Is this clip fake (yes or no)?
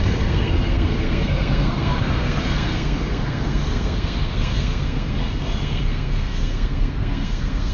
yes